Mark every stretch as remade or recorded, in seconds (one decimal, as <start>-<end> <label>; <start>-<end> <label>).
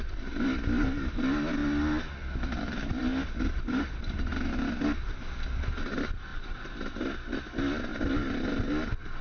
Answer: 0.0-3.0 recorded; 3.0-4.3 remade; 4.3-6.3 recorded; 6.3-7.0 remade; 7.0-9.2 recorded